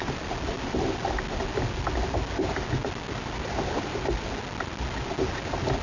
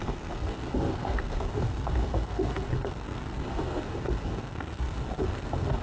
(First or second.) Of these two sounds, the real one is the first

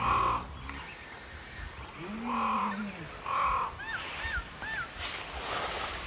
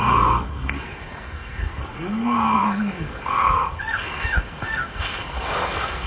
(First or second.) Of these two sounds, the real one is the first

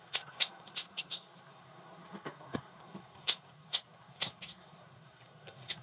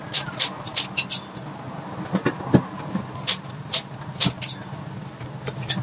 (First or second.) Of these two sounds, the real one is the second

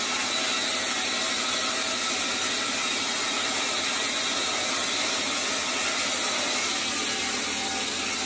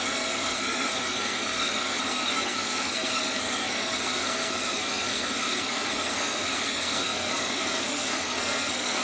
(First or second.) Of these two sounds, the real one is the first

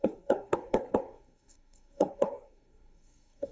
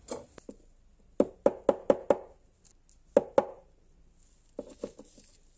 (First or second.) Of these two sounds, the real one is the second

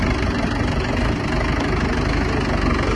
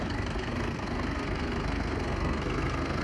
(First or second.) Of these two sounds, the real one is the first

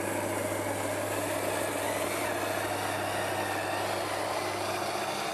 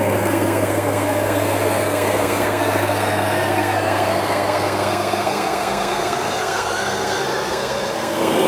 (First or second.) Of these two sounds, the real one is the first